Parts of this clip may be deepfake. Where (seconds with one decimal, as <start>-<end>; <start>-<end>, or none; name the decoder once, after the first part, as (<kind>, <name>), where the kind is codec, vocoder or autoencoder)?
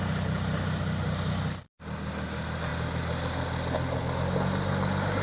none